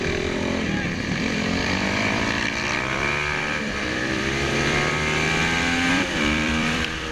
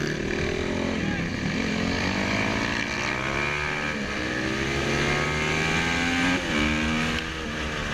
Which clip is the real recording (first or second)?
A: second